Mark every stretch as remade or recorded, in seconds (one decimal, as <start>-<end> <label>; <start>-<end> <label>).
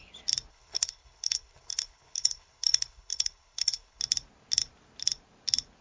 0.0-0.5 recorded; 0.5-4.0 remade; 4.0-5.8 recorded